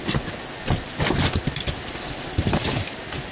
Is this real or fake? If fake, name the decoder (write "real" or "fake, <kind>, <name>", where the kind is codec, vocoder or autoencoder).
real